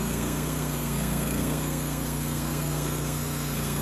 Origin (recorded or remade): remade